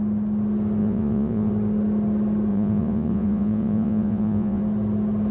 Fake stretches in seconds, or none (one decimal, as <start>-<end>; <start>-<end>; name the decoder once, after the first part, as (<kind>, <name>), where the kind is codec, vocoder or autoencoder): 0.8-1.5 (vocoder, Vocos); 2.5-4.6